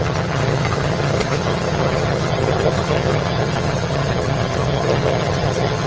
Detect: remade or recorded remade